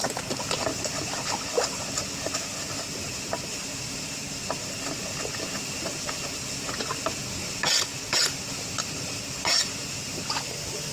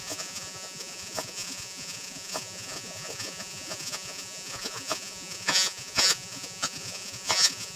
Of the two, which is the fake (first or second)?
second